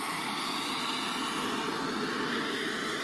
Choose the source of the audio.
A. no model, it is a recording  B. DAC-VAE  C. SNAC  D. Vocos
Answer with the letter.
A